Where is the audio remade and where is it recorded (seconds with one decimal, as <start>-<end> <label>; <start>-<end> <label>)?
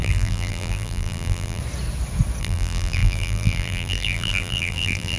0.0-1.6 remade; 1.6-2.4 recorded; 2.4-5.2 remade